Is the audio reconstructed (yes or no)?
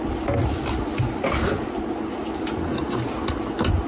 no